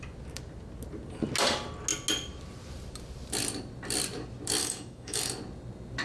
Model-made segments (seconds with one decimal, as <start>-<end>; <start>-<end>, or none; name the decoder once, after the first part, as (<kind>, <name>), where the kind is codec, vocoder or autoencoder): 4.6-5.2 (autoencoder, DAC-VAE)